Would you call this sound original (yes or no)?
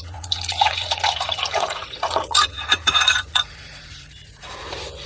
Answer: no